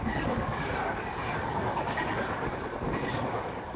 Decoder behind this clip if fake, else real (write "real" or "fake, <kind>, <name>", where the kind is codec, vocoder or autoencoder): fake, codec, DAC